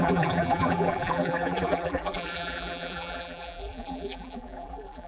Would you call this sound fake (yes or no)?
yes